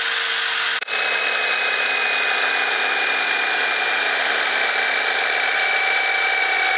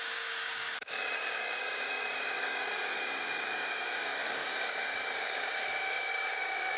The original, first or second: first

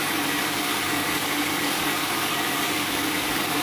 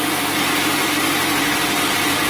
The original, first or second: second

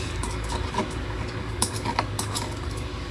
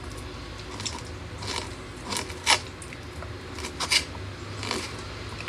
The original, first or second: second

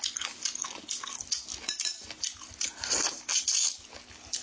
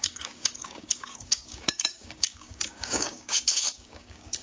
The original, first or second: first